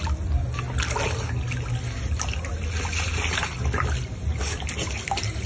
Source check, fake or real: real